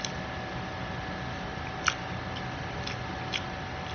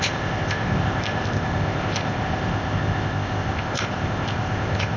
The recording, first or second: first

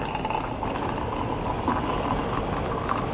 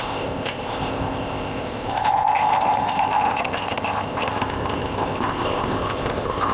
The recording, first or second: first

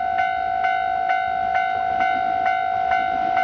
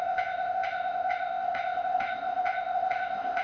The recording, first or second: first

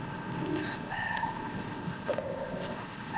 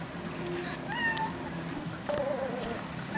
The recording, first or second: second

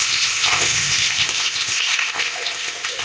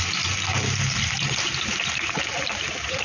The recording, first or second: second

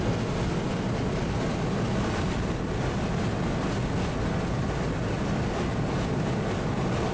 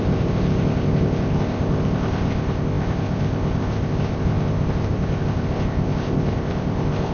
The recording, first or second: first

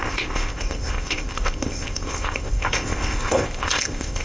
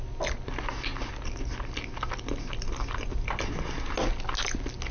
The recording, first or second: second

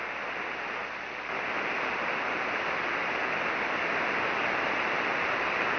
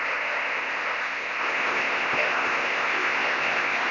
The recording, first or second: first